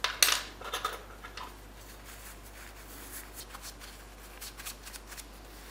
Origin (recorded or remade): recorded